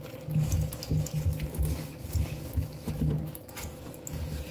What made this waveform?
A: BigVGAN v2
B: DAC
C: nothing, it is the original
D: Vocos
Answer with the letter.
B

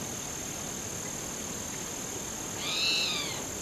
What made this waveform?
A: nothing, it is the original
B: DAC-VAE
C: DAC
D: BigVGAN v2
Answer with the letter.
A